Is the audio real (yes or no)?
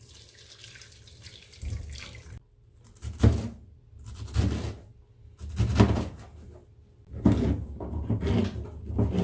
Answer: yes